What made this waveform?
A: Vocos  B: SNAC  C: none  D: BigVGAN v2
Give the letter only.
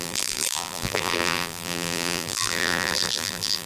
D